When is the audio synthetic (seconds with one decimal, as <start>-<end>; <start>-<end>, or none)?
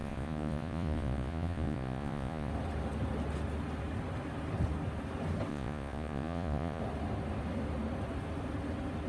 0.0-2.5; 5.5-6.8